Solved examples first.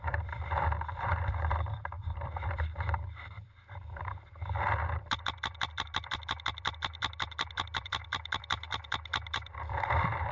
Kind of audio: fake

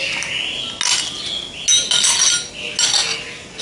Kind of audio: real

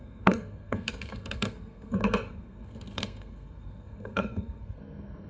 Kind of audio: fake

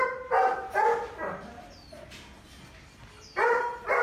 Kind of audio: real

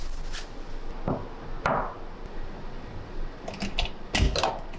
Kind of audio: real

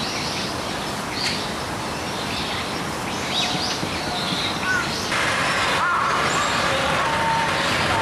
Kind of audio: real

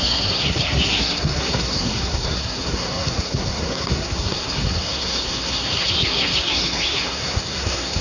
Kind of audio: fake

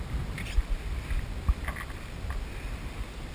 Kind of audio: real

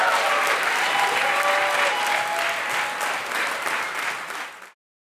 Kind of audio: real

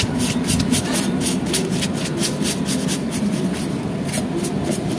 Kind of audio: real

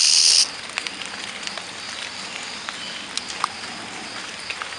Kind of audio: real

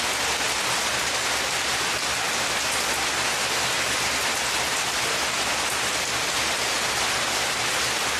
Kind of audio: real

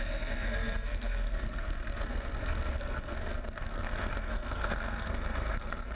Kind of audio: fake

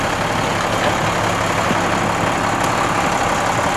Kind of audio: real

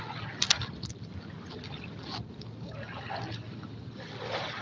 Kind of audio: real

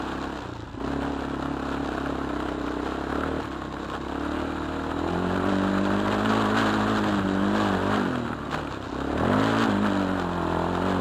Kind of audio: real